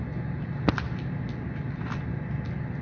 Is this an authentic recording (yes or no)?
yes